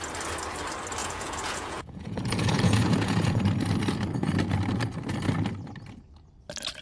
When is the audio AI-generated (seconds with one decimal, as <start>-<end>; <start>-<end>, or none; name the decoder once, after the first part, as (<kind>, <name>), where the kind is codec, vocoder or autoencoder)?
1.0-3.4 (vocoder, Vocos)